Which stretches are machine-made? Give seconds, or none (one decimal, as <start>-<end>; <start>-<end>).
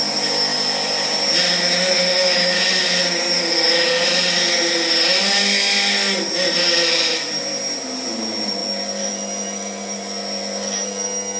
none